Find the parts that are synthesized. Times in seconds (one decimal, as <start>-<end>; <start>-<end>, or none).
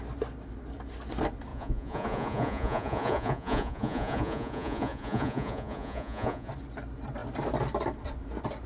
1.5-6.5